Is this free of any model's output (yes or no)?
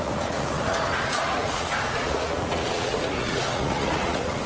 no